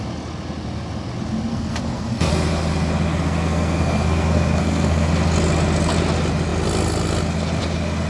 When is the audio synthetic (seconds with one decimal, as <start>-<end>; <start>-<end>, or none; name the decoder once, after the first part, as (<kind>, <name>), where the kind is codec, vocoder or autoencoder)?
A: 1.5-2.3 (codec, SNAC); 3.1-5.1